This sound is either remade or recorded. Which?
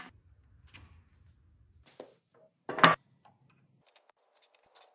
recorded